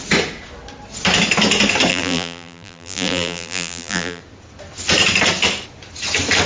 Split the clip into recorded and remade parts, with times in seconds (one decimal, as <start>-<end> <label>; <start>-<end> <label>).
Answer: 0.0-1.9 recorded; 1.9-4.2 remade; 4.2-6.5 recorded